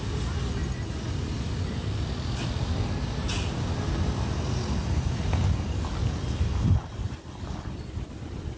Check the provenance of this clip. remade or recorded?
recorded